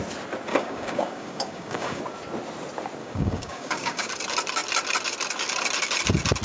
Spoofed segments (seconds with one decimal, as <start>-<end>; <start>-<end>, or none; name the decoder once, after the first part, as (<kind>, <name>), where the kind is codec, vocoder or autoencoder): 0.5-2.0 (codec, DAC); 3.0-4.1